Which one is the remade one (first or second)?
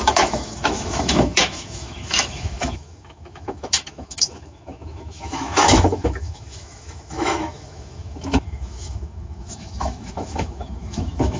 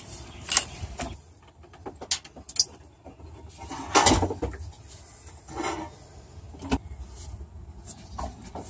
first